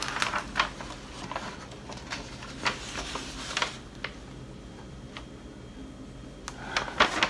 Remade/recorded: recorded